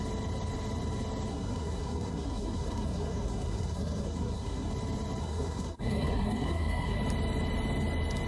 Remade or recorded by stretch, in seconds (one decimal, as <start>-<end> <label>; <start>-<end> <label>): 0.0-1.3 recorded; 1.3-4.7 remade; 4.7-5.2 recorded; 5.2-7.0 remade; 7.0-8.3 recorded

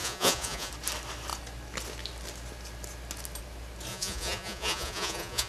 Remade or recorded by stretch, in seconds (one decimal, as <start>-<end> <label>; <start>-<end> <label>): 0.0-0.7 remade; 0.7-3.9 recorded; 3.9-5.5 remade

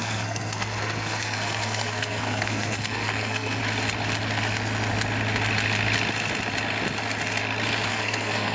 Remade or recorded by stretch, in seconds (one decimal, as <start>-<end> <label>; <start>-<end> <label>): 0.0-3.6 remade; 3.6-7.9 recorded; 7.9-8.5 remade

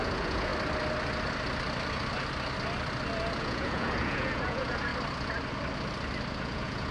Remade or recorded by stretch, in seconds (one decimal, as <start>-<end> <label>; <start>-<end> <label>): 0.0-0.5 remade; 0.5-3.4 recorded; 3.4-4.9 remade; 4.9-6.4 recorded; 6.4-6.9 remade

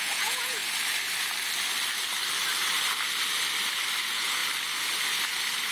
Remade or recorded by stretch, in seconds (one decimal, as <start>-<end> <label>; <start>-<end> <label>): 0.0-0.6 remade; 0.6-4.0 recorded; 4.0-4.4 remade; 4.4-5.7 recorded